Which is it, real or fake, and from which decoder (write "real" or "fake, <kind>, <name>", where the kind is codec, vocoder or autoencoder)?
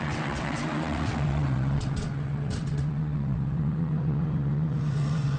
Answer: fake, vocoder, WaveNeXt